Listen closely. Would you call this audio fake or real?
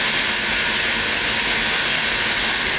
real